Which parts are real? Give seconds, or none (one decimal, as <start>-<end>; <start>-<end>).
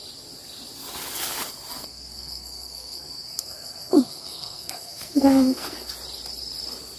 0.0-1.7; 5.9-7.0